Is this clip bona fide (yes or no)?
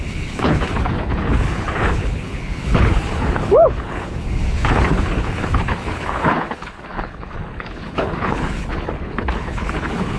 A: no